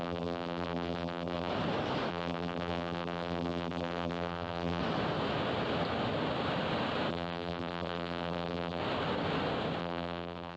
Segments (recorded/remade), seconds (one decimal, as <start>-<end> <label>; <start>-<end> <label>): 0.0-1.5 remade; 1.5-2.1 recorded; 2.1-4.8 remade; 4.8-7.1 recorded; 7.1-8.8 remade; 8.8-9.8 recorded; 9.8-10.6 remade